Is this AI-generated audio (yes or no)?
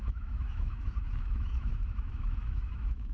yes